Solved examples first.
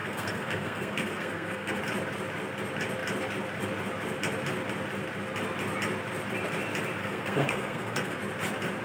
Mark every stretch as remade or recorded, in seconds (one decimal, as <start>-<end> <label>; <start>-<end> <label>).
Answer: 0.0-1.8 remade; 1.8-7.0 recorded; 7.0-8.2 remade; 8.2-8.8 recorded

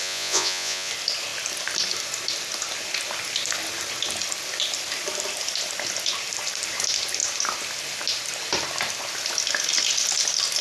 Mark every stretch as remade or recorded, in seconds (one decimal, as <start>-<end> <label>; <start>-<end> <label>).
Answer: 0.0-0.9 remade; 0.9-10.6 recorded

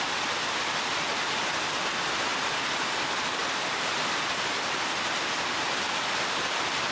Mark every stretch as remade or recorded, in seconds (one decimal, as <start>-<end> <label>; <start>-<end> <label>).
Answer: 0.0-2.3 recorded; 2.3-3.0 remade; 3.0-6.9 recorded